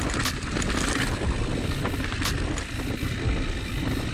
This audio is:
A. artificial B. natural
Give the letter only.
B